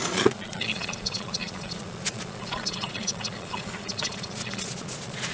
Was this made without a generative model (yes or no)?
no